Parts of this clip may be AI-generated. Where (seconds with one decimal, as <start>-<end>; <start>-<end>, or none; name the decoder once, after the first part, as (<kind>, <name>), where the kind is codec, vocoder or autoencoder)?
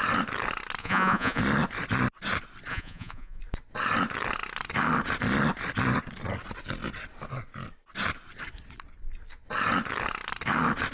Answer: 0.8-1.4 (vocoder, Vocos); 2.7-3.4